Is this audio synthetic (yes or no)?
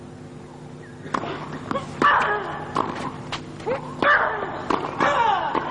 no